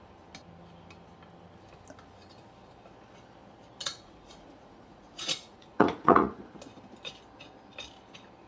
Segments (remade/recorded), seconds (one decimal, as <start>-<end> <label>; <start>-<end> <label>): 0.0-3.8 recorded; 3.8-6.4 remade; 6.4-8.5 recorded